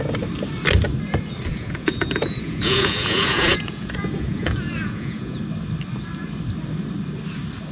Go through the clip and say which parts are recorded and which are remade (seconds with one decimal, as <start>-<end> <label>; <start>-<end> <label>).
0.0-1.5 recorded; 1.5-5.4 remade; 5.4-7.7 recorded